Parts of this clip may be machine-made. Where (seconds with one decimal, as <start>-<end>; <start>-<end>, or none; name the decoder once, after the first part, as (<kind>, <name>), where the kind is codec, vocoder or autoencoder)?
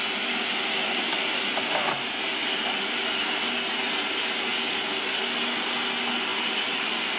6.3-7.2 (vocoder, BigVGAN v2)